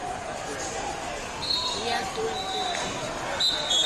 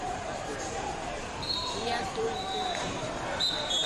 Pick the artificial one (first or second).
second